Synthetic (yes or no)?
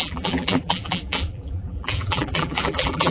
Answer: yes